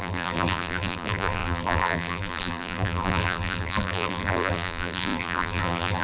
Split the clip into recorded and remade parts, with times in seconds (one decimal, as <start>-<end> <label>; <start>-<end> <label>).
0.0-6.0 remade